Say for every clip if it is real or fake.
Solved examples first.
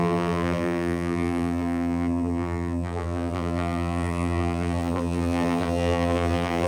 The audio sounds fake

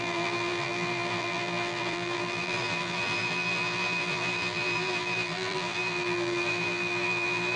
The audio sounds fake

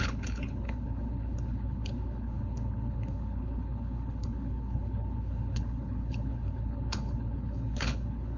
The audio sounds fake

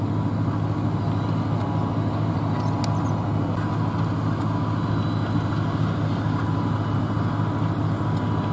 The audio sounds real